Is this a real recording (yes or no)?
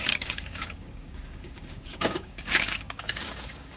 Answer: no